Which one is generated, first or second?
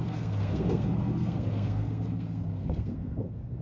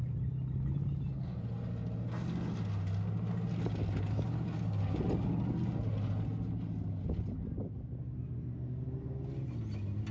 first